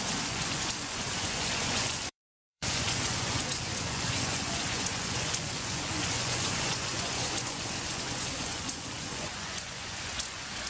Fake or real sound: fake